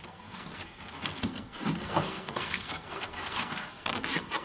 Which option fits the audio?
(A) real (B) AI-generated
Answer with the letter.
B